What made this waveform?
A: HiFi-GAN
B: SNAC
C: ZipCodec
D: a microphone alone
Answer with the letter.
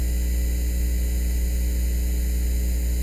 D